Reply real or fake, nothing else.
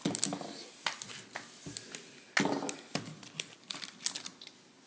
real